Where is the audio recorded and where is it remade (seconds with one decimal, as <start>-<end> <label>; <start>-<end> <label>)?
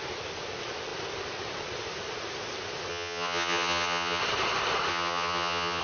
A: 0.0-2.9 recorded; 2.9-4.2 remade; 4.2-4.9 recorded; 4.9-5.8 remade